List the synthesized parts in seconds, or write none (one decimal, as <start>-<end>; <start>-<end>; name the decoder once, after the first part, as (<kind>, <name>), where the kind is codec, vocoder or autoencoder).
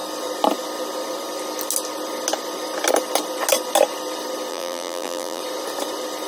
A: 4.5-5.4 (vocoder, BigVGAN v2)